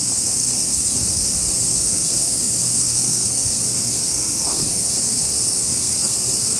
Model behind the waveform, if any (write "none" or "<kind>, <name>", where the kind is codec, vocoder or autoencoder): codec, SNAC